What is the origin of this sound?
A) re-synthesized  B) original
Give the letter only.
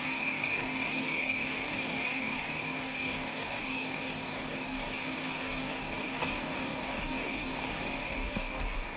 A